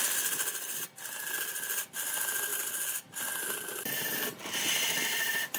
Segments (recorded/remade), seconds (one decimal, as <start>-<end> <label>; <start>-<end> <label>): 0.0-5.6 recorded